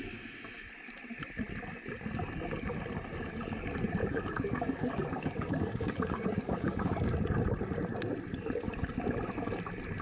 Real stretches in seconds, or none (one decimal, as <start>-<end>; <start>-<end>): 0.0-4.0; 6.9-10.0